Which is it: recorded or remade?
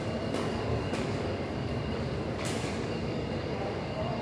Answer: remade